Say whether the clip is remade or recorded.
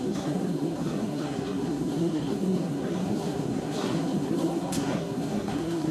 remade